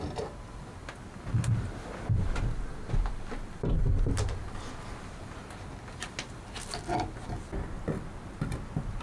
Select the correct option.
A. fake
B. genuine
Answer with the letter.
B